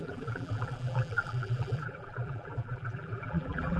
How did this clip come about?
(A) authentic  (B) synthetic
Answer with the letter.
B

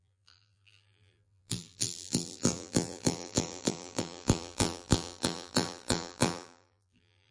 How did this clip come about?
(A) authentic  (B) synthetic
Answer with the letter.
B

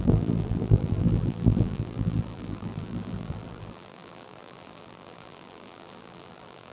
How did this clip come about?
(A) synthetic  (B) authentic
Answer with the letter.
A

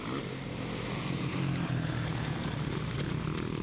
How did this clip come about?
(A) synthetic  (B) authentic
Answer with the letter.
B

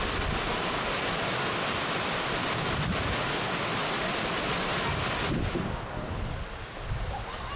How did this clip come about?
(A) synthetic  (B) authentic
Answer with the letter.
B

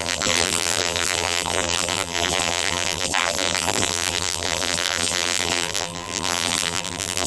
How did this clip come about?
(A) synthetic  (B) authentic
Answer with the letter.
A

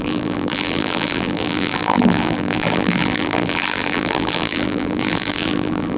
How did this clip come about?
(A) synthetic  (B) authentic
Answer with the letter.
A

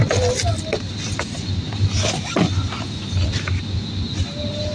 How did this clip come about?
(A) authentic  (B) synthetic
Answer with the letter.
A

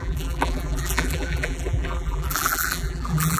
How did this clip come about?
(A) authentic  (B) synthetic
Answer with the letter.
B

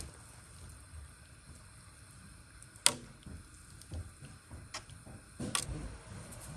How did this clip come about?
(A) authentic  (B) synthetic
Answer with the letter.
A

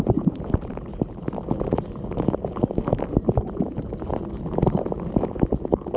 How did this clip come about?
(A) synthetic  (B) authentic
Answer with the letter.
A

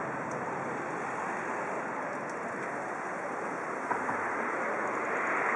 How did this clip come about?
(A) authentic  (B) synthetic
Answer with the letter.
A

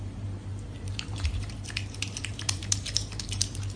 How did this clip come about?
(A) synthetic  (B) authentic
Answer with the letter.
A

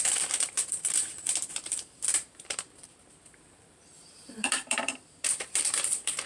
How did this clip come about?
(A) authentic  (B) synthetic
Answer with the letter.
B